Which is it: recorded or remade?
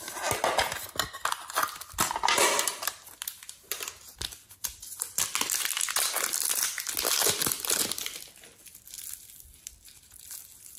recorded